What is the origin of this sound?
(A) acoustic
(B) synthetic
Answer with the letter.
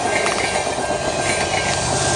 A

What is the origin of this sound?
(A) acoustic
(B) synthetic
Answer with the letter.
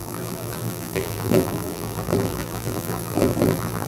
B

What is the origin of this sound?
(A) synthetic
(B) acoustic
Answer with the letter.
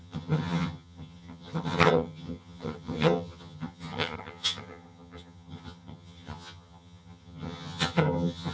A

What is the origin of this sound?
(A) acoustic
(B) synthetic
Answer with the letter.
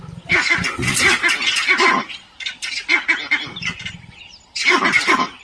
A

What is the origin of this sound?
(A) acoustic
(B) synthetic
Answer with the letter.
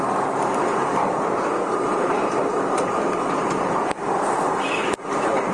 A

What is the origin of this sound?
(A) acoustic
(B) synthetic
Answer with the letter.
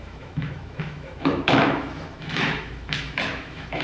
B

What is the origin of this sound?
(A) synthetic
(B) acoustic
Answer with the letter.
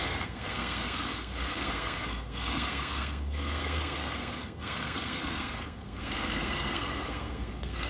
A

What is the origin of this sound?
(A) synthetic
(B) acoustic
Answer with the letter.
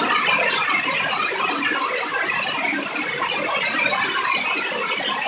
B